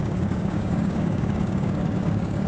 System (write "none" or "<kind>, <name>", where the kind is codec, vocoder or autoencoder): codec, DAC